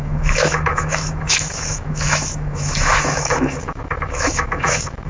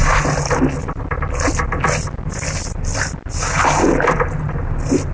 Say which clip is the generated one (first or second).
first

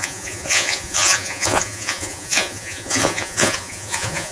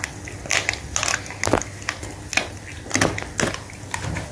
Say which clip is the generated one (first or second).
first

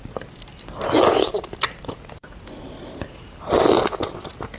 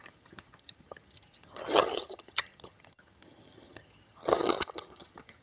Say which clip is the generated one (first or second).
second